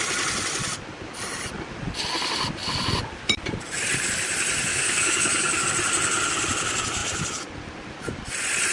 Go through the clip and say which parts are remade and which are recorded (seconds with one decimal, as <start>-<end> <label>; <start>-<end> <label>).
0.0-4.7 recorded; 4.7-5.7 remade; 5.7-8.7 recorded